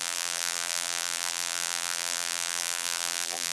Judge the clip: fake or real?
fake